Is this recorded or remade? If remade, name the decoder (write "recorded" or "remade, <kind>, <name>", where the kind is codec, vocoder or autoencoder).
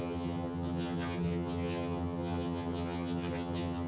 remade, vocoder, HiFi-GAN